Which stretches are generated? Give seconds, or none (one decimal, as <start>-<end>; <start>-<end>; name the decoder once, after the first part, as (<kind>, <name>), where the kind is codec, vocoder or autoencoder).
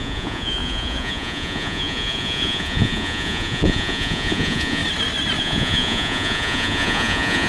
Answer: 0.0-4.8 (vocoder, Vocos); 5.4-7.5